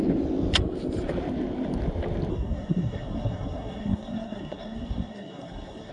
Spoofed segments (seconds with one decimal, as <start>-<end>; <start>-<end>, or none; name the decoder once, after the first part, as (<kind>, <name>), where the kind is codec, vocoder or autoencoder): 2.3-5.9 (codec, SNAC)